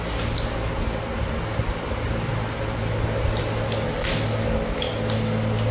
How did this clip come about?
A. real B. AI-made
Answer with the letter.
A